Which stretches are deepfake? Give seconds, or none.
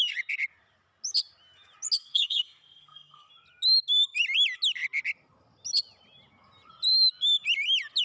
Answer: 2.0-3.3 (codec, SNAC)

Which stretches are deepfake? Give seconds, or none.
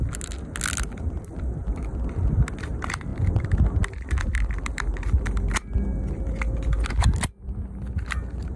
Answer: none